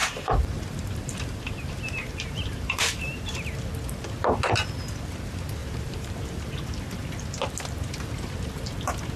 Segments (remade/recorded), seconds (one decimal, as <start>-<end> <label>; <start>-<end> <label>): 0.0-3.2 remade; 3.2-5.6 recorded; 5.6-6.4 remade; 6.4-9.2 recorded

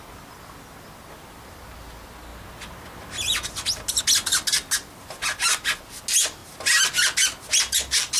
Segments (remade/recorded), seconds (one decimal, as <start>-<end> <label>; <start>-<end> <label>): 0.0-8.2 recorded